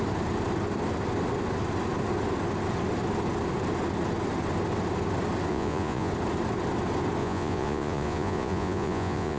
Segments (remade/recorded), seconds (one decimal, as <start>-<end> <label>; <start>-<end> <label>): 0.0-5.5 recorded; 5.5-6.1 remade; 6.1-7.2 recorded; 7.2-9.4 remade